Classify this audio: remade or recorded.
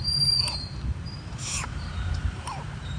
remade